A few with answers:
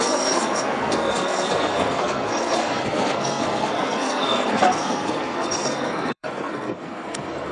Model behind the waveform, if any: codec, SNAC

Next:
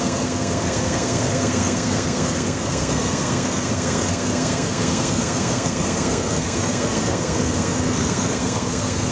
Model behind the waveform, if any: codec, SNAC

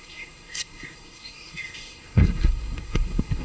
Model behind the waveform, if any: codec, SNAC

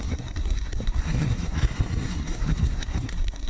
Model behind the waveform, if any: codec, SNAC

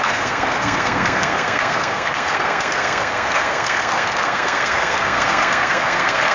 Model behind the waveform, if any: codec, SNAC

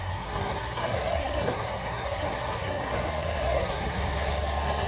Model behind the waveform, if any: codec, SNAC